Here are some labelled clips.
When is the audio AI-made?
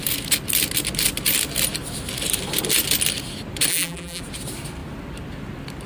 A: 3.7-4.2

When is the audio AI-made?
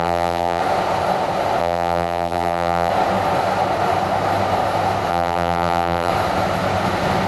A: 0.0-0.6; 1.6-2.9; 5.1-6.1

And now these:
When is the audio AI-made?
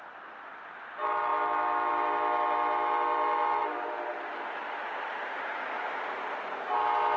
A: none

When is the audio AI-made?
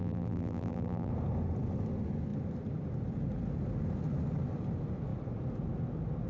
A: 0.0-1.1